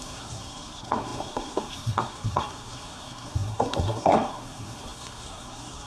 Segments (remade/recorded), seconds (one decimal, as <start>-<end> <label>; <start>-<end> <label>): 0.0-5.9 remade